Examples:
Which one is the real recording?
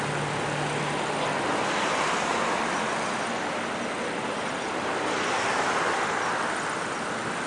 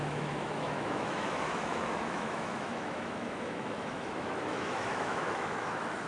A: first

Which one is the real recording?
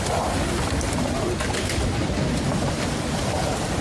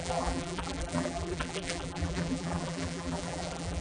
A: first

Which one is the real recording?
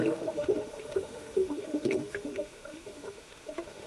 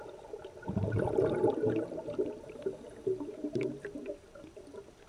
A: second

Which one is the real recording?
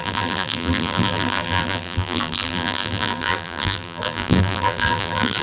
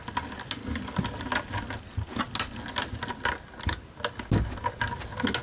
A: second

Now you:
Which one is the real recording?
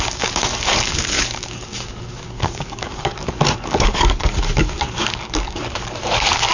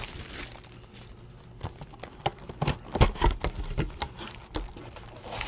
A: second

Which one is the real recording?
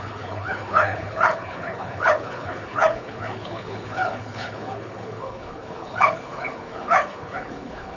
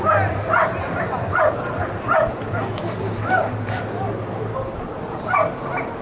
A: second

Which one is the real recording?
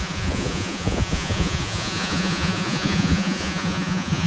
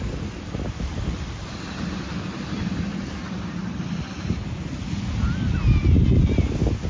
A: second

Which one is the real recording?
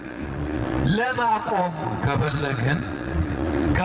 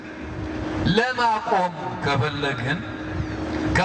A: second